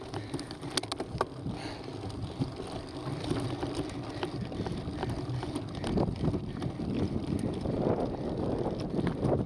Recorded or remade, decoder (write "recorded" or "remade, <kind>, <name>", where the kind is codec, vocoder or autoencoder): recorded